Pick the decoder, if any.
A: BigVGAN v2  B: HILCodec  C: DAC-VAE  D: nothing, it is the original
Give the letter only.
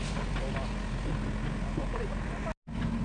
D